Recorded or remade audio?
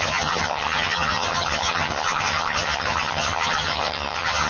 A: remade